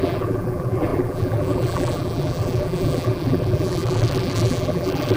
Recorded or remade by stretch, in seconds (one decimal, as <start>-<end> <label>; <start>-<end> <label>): 0.0-5.2 remade